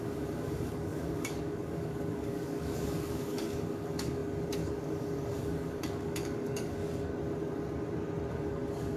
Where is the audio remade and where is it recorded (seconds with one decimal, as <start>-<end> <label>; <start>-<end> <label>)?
0.0-7.1 remade; 7.1-8.3 recorded; 8.3-9.0 remade